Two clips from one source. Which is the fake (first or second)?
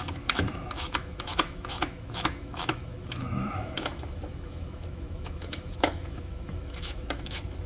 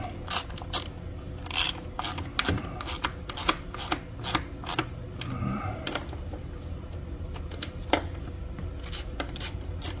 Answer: first